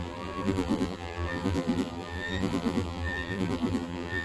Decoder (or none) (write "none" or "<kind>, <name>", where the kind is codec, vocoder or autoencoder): vocoder, BigVGAN v2